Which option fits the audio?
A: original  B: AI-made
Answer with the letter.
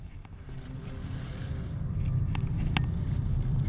B